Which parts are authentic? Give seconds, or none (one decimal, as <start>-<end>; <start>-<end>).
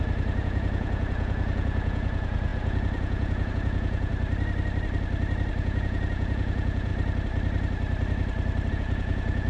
4.1-5.6; 6.9-8.7